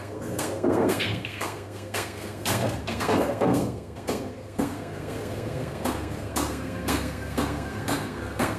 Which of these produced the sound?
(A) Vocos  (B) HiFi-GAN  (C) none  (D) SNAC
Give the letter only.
D